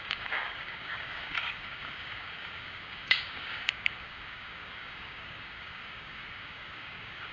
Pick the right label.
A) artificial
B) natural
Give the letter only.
A